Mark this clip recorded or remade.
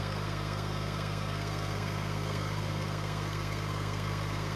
remade